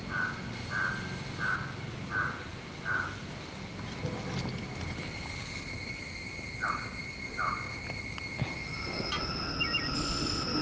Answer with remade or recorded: recorded